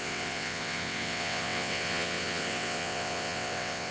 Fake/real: fake